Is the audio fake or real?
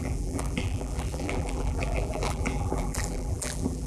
fake